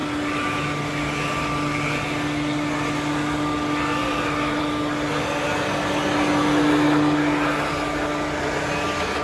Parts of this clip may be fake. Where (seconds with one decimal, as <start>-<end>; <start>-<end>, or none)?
none